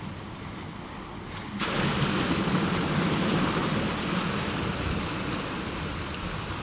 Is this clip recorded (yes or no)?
yes